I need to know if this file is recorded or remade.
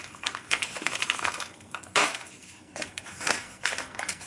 remade